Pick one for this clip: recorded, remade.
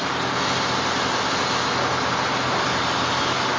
recorded